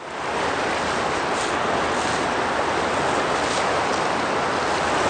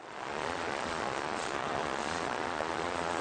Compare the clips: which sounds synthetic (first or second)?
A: second